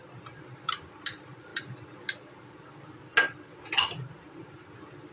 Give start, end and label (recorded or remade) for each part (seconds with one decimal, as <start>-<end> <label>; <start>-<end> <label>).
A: 0.0-5.1 recorded